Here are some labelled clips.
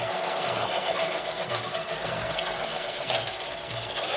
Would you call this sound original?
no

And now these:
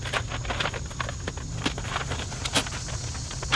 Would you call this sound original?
yes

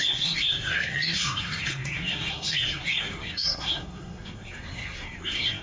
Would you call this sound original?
no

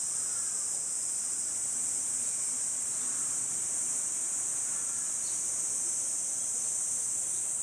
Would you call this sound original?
yes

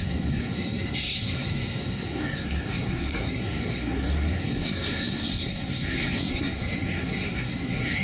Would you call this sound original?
no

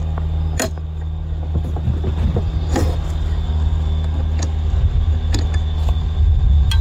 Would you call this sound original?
yes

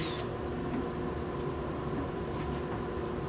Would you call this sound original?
yes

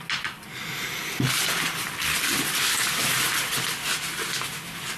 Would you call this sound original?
yes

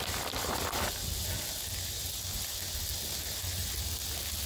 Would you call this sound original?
yes